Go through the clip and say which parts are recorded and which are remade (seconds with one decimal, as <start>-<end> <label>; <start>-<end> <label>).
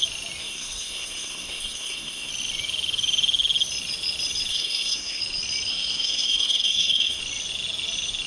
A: 0.0-0.4 recorded; 0.4-2.3 remade; 2.3-4.5 recorded; 4.5-5.2 remade; 5.2-5.7 recorded; 5.7-7.2 remade; 7.2-8.3 recorded